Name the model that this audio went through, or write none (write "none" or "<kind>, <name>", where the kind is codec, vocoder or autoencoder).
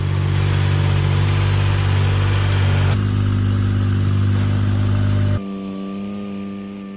none